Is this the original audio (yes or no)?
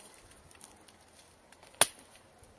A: yes